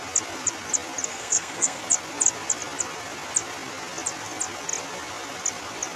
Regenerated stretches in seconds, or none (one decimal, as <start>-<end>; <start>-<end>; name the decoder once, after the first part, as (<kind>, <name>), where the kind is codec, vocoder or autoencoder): 1.1-1.8 (codec, SNAC)